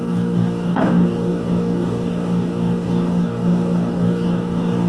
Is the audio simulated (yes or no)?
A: yes